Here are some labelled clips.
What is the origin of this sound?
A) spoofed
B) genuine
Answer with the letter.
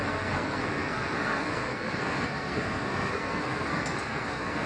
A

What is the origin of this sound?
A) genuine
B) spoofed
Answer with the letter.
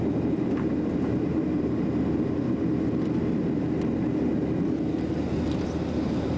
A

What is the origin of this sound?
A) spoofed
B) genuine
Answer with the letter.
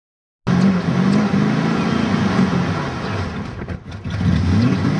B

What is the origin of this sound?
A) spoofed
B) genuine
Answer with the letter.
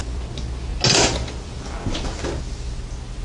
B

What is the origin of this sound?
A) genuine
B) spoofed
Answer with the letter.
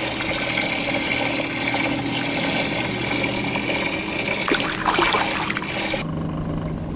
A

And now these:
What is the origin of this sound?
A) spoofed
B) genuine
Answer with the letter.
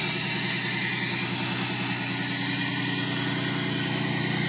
B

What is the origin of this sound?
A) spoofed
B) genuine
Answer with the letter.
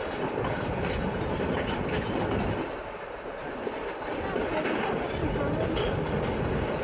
B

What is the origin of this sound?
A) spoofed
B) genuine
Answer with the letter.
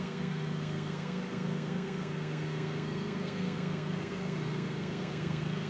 A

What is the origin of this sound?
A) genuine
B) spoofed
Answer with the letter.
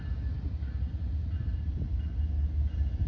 A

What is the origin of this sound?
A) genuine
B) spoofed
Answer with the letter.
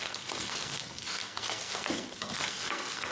B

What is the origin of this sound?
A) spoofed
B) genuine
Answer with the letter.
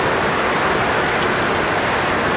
B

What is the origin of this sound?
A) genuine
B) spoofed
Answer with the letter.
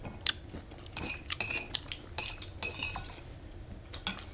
A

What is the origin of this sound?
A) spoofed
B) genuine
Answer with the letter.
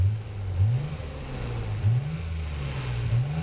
B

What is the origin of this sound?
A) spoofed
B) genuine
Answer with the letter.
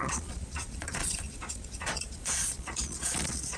A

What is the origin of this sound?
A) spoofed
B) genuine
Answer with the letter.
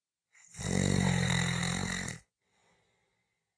B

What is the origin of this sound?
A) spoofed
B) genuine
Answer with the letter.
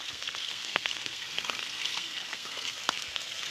A